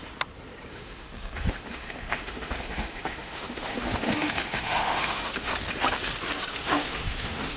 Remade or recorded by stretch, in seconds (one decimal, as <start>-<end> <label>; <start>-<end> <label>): 0.0-0.7 recorded; 0.7-5.5 remade; 5.5-6.5 recorded; 6.5-7.6 remade